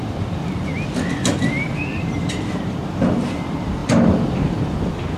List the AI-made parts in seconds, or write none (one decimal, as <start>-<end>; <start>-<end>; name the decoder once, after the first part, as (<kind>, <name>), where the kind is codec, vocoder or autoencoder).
0.0-0.7 (vocoder, BigVGAN v2); 1.3-5.2